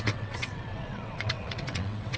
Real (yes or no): no